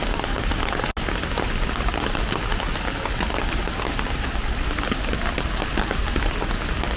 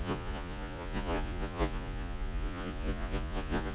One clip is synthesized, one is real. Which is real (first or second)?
first